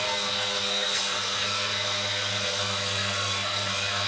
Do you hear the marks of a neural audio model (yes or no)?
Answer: yes